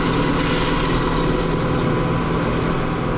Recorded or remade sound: recorded